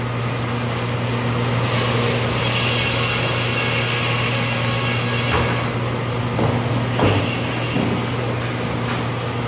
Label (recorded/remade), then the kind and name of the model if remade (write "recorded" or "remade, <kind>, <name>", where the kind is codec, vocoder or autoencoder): recorded